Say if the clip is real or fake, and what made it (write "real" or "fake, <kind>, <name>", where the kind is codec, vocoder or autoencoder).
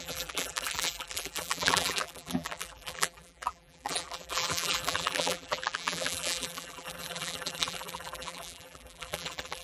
fake, vocoder, BigVGAN v2